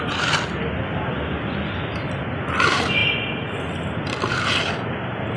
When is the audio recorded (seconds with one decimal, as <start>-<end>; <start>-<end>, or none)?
0.0-5.4